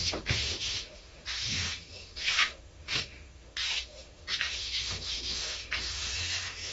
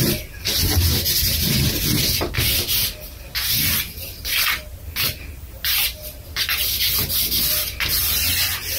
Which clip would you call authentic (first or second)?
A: second